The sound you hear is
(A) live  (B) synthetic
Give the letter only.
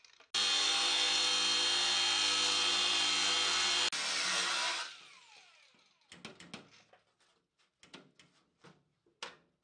A